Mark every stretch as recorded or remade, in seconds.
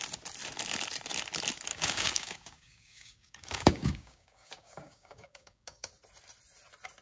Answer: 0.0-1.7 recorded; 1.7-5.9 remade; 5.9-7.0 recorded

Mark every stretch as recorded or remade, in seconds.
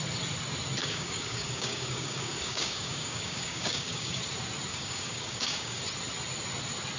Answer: 0.0-0.8 recorded; 0.8-4.2 remade; 4.2-4.7 recorded; 4.7-5.8 remade; 5.8-7.0 recorded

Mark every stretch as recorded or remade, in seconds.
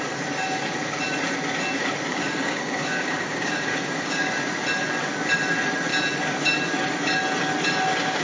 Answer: 0.0-2.1 recorded; 2.1-4.3 remade; 4.3-8.2 recorded